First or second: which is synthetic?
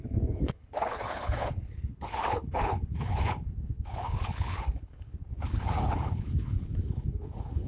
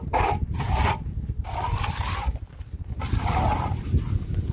first